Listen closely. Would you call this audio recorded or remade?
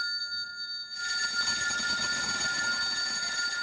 recorded